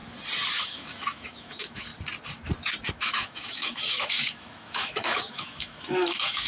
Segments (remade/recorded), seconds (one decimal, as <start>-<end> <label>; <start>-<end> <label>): 0.0-0.6 recorded; 0.6-1.9 remade; 1.9-2.9 recorded; 2.9-6.5 remade